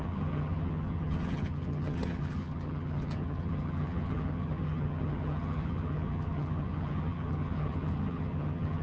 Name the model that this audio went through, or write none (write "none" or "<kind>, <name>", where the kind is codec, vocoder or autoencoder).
vocoder, HiFi-GAN